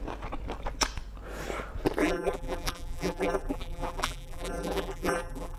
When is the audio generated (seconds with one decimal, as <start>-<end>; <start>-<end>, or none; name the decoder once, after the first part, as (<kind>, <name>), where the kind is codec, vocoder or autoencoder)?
2.0-5.6 (vocoder, BigVGAN v2)